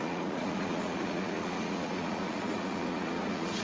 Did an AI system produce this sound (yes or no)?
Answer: yes